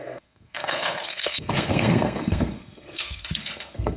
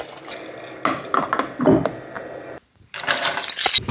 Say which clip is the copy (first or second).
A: first